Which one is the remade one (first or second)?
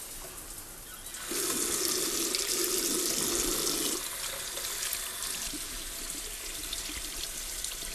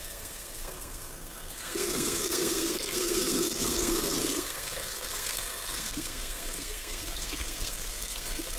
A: second